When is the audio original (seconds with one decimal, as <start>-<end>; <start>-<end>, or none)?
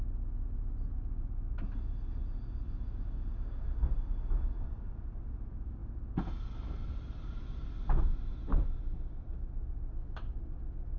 0.0-11.0